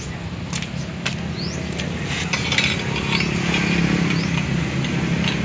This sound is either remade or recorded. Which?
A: recorded